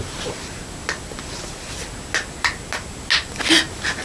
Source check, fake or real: real